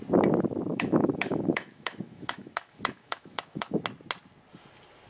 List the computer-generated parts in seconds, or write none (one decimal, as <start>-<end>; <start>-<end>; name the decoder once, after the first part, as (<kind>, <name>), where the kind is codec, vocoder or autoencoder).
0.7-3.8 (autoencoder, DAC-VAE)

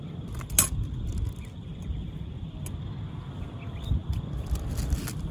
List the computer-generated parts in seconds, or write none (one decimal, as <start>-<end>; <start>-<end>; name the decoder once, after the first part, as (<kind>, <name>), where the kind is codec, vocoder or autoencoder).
none

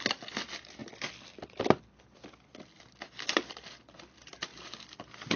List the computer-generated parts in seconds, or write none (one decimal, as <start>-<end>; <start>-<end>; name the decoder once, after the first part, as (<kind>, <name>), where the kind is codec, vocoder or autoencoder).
none

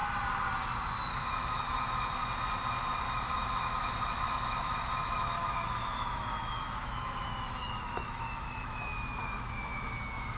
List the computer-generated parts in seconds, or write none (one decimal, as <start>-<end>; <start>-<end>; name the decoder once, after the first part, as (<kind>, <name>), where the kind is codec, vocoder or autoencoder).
1.1-2.2 (autoencoder, DAC-VAE); 3.1-10.4

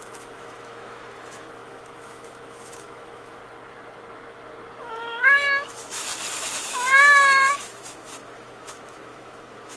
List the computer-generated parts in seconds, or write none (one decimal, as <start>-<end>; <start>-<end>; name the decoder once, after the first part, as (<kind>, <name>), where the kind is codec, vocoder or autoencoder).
0.0-3.4 (autoencoder, DAC-VAE); 4.8-6.1; 6.6-9.8

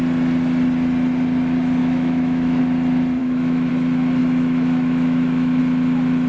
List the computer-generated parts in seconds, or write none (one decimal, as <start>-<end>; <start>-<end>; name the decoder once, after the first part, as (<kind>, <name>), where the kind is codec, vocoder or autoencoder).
1.8-2.6 (autoencoder, DAC-VAE); 3.2-3.7; 4.2-5.6

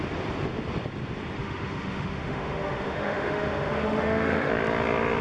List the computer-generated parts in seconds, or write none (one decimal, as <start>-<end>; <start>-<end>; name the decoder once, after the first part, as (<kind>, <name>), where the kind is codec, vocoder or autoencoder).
1.4-4.5 (autoencoder, DAC-VAE)